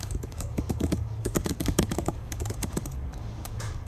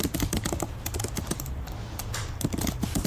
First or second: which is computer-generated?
first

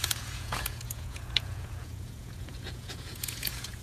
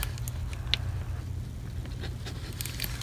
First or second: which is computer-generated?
first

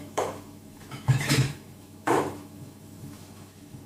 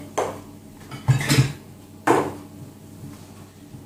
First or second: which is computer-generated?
first